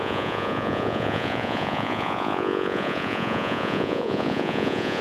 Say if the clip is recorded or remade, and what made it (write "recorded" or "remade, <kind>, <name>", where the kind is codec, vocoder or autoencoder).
remade, vocoder, Vocos